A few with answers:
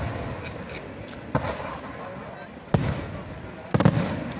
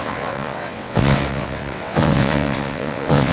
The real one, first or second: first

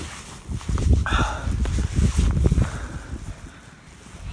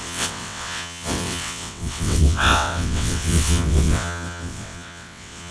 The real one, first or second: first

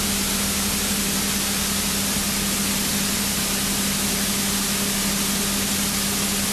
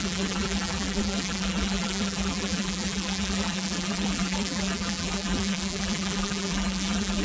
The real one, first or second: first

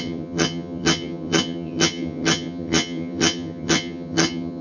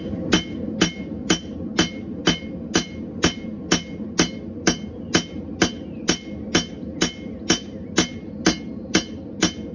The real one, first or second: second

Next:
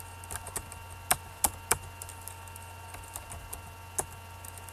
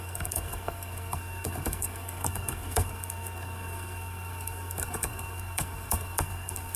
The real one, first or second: first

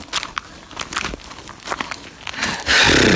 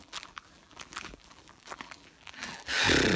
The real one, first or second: first